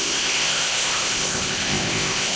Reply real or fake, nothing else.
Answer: fake